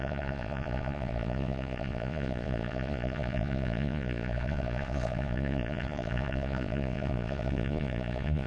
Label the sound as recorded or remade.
remade